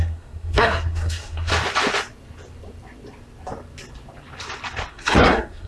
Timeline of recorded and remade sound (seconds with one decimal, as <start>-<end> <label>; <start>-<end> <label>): 0.0-1.5 remade; 1.5-4.9 recorded; 4.9-5.7 remade